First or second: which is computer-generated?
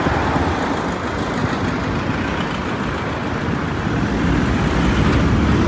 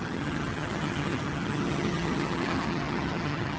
second